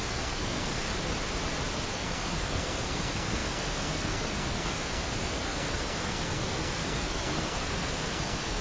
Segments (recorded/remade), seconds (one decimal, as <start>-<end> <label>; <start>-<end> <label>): 0.0-0.9 remade; 0.9-1.9 recorded; 1.9-8.6 remade